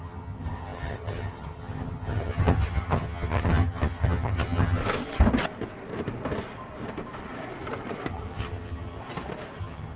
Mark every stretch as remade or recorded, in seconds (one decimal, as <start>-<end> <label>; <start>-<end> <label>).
0.0-4.8 remade; 4.8-8.1 recorded; 8.1-9.0 remade; 9.0-9.6 recorded; 9.6-10.0 remade